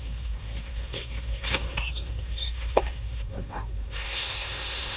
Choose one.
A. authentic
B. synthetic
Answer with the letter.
B